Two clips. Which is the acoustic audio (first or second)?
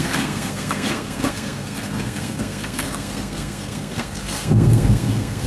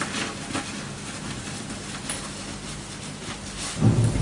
second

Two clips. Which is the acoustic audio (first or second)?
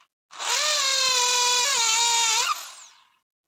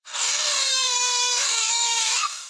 first